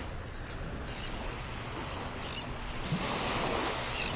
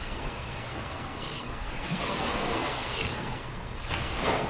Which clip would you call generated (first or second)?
second